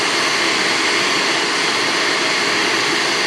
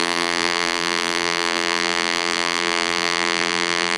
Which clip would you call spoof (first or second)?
second